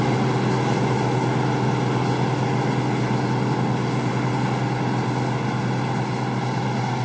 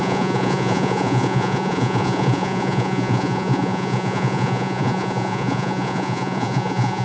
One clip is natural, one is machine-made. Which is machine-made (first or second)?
second